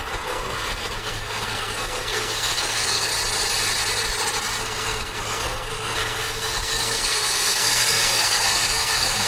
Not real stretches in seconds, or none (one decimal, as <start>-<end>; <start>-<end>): 0.0-3.1; 4.6-9.3